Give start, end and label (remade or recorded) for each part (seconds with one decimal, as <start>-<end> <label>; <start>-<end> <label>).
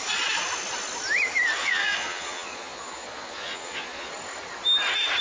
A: 0.0-1.6 recorded; 1.6-4.1 remade; 4.1-5.2 recorded